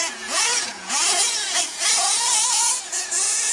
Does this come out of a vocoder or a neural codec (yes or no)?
yes